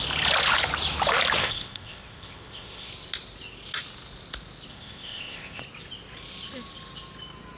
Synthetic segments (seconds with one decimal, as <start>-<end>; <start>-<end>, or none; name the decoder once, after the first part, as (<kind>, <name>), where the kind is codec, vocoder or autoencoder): 1.4-2.9 (codec, ZipCodec); 4.7-5.6